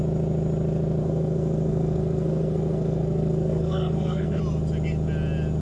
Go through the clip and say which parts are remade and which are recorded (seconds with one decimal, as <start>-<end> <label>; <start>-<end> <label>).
0.0-1.0 recorded; 1.0-4.4 remade; 4.4-5.6 recorded